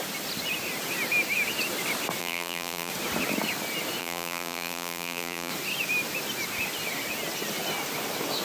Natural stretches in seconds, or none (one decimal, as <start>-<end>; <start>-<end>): 0.0-2.2; 2.9-4.0; 5.5-8.4